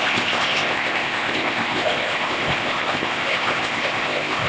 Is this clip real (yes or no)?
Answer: no